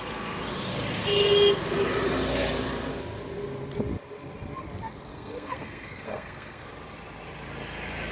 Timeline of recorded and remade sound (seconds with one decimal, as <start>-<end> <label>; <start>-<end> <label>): 0.0-5.1 recorded; 5.1-6.6 remade; 6.6-8.1 recorded